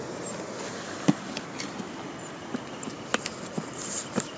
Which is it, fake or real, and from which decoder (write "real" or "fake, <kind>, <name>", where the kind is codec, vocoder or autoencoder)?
real